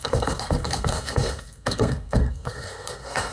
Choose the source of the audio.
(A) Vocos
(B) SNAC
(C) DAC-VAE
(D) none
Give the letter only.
B